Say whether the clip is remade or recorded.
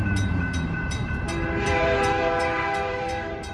remade